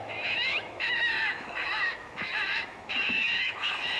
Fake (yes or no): yes